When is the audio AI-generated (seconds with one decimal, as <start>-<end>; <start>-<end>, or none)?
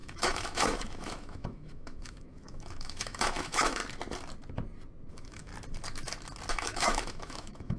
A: 0.0-3.8; 5.1-5.5; 6.5-7.8